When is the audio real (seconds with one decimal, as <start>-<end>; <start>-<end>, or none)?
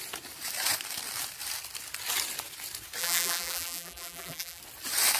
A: 0.0-3.0; 4.6-5.2